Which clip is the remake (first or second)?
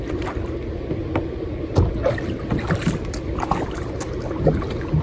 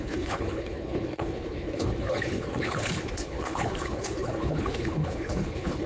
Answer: second